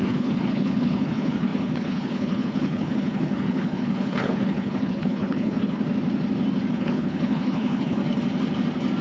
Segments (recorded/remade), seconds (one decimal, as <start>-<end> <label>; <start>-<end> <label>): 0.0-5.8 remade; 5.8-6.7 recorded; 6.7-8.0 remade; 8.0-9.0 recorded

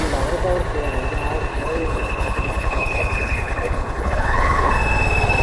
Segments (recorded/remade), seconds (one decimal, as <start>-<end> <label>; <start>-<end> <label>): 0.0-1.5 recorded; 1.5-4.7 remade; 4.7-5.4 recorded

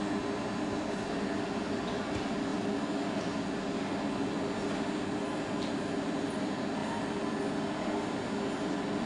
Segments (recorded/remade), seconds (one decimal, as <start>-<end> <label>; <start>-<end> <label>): 0.0-9.1 recorded

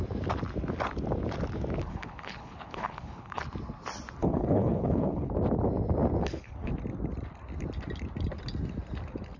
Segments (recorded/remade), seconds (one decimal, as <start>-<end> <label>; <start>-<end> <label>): 0.0-1.9 recorded; 1.9-3.4 remade; 3.4-4.2 recorded; 4.2-5.3 remade; 5.3-6.2 recorded; 6.2-6.7 remade; 6.7-9.4 recorded